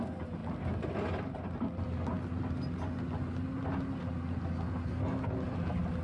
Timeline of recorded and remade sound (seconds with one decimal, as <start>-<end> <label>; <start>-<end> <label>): 0.0-6.0 recorded